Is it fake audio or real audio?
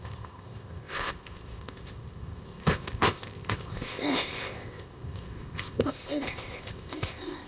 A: fake